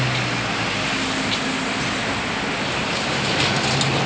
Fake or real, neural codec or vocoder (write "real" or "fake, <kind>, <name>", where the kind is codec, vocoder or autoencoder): real